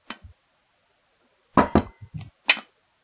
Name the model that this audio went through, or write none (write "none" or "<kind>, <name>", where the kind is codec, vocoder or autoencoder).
none